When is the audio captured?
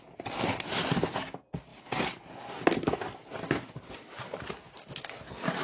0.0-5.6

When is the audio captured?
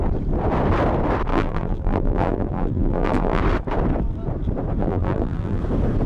0.0-1.3; 3.4-4.8; 5.6-6.1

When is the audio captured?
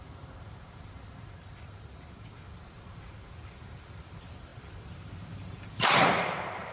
none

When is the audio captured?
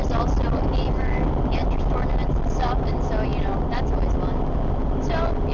0.0-5.5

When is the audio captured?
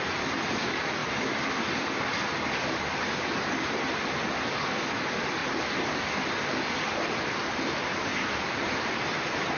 0.0-5.4; 6.2-8.1; 8.9-9.6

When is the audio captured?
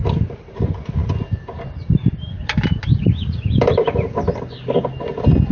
0.5-2.4; 3.8-5.5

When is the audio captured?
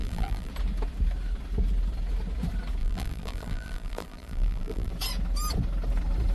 0.5-2.8; 4.9-6.3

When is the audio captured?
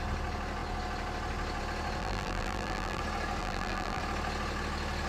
0.0-2.0; 3.0-3.4; 4.0-5.1